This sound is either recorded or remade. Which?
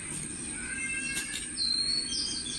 recorded